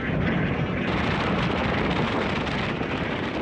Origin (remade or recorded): recorded